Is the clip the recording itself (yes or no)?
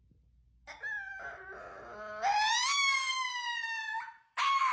yes